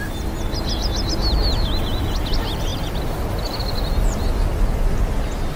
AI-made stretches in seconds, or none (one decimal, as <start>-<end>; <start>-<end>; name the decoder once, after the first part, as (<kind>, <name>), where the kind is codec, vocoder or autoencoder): none